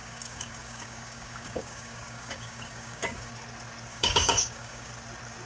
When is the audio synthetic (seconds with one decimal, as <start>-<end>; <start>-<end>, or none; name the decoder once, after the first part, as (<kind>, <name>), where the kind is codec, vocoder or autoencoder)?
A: 0.0-3.3 (codec, DAC); 3.9-4.9